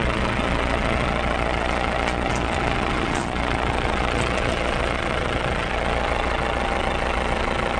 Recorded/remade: remade